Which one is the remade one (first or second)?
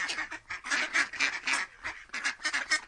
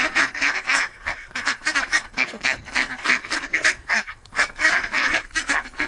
second